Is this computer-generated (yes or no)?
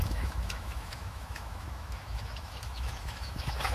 yes